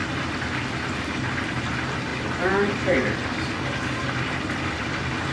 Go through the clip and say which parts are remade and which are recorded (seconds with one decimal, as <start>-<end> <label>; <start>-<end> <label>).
0.0-1.1 recorded; 1.1-2.1 remade; 2.1-5.3 recorded